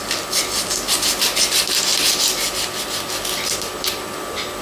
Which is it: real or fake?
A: real